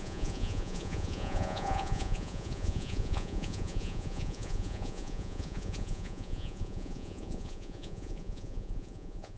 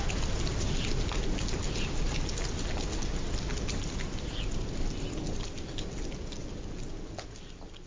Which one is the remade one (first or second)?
first